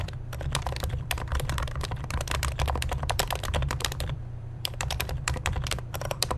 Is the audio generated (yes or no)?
yes